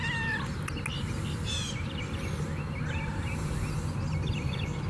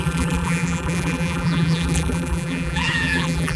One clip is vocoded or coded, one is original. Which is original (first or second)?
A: first